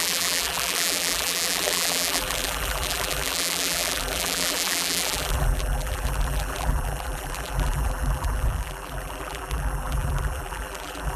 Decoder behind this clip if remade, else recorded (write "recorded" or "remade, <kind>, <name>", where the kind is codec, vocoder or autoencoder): remade, vocoder, BigVGAN v2